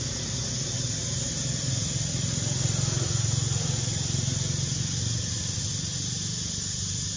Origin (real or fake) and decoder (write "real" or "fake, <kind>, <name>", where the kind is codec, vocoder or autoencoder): real